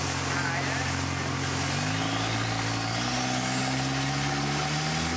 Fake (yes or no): no